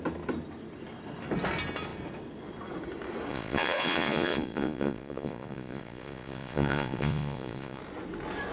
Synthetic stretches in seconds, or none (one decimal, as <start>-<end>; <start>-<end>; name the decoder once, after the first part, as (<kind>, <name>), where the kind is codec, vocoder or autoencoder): 3.3-7.8 (vocoder, Vocos)